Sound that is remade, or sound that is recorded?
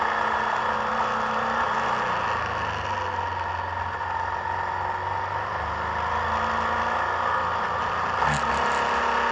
recorded